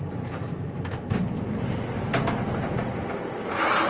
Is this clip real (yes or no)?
yes